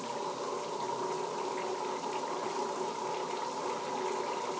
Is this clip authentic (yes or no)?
yes